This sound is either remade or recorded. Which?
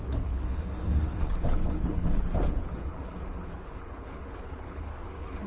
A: remade